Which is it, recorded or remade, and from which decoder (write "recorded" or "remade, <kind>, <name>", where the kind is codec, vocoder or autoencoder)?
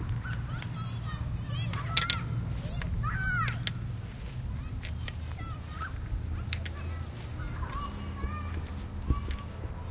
recorded